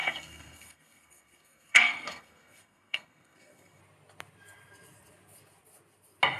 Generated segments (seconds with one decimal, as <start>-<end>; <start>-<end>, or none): 0.0-3.8